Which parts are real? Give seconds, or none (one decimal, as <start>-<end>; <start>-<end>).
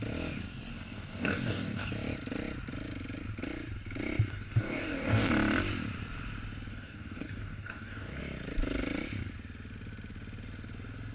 0.0-0.7; 1.9-4.3; 5.3-6.7; 8.2-11.1